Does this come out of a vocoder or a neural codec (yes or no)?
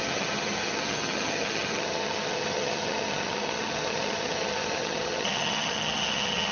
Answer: yes